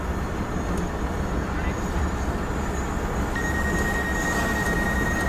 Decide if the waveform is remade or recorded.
recorded